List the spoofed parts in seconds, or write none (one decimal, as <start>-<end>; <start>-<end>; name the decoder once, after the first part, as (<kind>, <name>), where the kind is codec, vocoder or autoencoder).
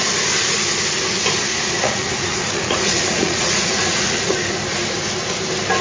1.5-4.3 (vocoder, Vocos)